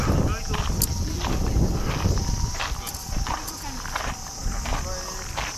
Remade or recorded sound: recorded